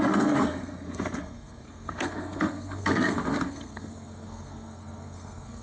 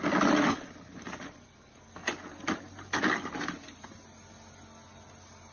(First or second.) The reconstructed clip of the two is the first